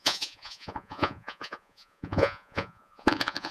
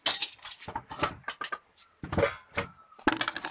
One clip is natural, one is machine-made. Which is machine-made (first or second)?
first